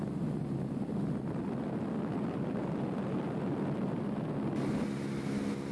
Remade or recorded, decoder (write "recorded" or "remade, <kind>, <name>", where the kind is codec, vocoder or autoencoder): recorded